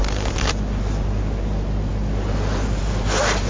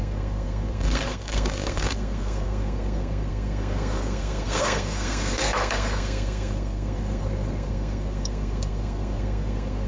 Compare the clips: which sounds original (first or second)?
first